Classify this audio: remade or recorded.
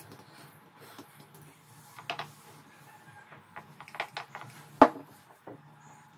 recorded